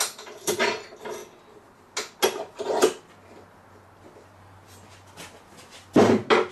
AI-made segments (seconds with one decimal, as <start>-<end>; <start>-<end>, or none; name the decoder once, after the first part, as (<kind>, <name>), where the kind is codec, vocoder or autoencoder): none